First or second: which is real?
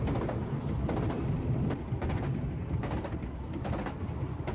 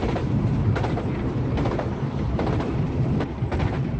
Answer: first